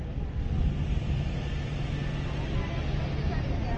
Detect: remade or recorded recorded